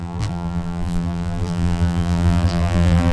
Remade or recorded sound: remade